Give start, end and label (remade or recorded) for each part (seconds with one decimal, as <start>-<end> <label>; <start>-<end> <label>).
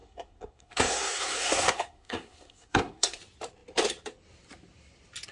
0.0-3.2 remade; 3.2-5.3 recorded